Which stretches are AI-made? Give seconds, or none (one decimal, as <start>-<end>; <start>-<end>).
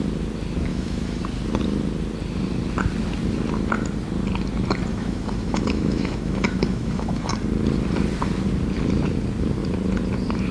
0.7-1.2; 4.9-7.3